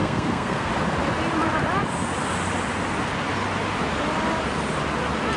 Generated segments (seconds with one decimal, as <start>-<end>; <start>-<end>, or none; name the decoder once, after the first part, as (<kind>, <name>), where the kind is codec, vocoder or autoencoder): 0.0-0.7 (codec, SNAC)